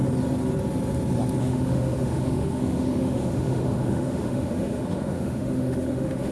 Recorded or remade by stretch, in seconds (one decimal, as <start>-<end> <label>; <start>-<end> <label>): 0.0-1.4 recorded; 1.4-6.3 remade